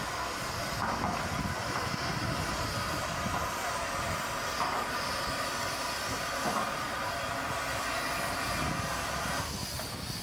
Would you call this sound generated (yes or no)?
no